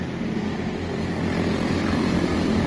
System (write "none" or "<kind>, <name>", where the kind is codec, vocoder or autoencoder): none